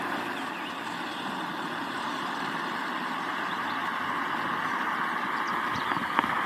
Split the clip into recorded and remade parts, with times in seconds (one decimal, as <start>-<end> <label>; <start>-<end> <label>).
0.0-1.8 recorded; 1.8-3.8 remade; 3.8-6.5 recorded